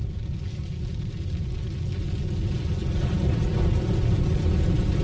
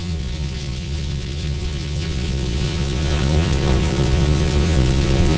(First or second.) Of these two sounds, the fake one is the second